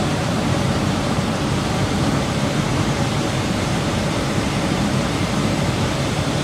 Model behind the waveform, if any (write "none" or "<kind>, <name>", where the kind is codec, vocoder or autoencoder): vocoder, BigVGAN v2